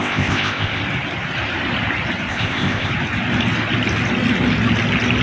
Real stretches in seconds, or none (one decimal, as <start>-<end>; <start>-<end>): 0.8-2.3; 2.9-5.2